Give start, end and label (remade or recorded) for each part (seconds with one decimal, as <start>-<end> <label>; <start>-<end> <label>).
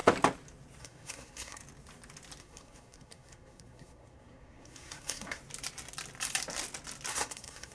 0.0-0.8 recorded; 0.8-1.6 remade; 1.6-2.4 recorded; 2.4-5.4 remade; 5.4-7.1 recorded; 7.1-7.7 remade